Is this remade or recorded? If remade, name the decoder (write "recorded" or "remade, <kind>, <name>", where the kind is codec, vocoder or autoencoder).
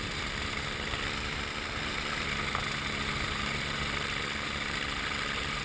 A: recorded